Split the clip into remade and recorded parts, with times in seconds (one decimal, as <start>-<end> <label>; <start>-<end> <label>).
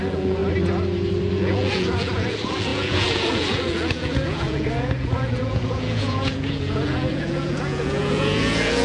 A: 0.0-0.4 remade; 0.4-1.3 recorded; 1.3-8.8 remade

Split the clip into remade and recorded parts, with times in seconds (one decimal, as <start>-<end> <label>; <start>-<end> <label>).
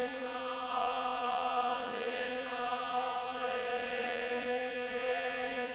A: 0.0-5.7 remade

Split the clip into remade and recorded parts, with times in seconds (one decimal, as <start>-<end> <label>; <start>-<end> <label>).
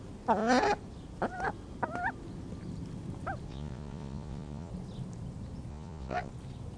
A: 0.0-3.5 recorded; 3.5-4.7 remade; 4.7-5.7 recorded; 5.7-6.3 remade; 6.3-6.8 recorded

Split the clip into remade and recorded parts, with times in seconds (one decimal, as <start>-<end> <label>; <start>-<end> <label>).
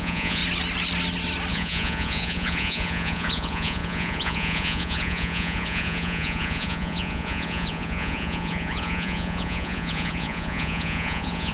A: 0.0-0.4 remade; 0.4-1.5 recorded; 1.5-11.5 remade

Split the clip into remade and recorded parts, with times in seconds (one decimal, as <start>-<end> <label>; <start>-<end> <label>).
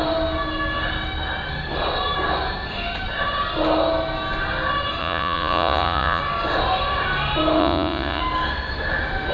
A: 0.0-5.0 recorded; 5.0-6.2 remade; 6.2-7.6 recorded; 7.6-8.2 remade; 8.2-9.3 recorded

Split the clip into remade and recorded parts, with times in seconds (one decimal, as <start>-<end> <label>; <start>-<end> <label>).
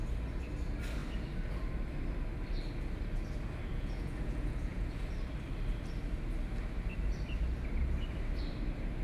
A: 0.0-3.7 recorded; 3.7-5.1 remade; 5.1-9.0 recorded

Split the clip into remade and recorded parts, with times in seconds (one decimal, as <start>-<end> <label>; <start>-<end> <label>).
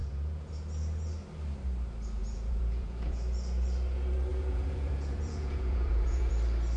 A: 0.0-0.5 remade; 0.5-2.2 recorded; 2.2-3.2 remade; 3.2-4.3 recorded; 4.3-6.3 remade; 6.3-6.8 recorded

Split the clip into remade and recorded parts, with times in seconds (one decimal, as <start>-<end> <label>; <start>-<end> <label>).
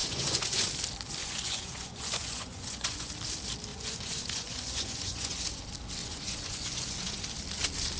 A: 0.0-0.7 remade; 0.7-1.2 recorded; 1.2-3.1 remade; 3.1-3.7 recorded; 3.7-5.6 remade; 5.6-6.0 recorded; 6.0-7.2 remade; 7.2-8.0 recorded